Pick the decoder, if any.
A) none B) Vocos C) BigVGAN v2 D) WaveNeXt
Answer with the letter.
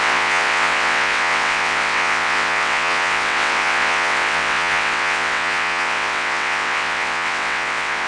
D